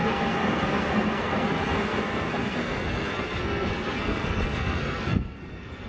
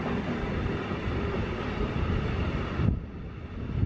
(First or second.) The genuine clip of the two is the second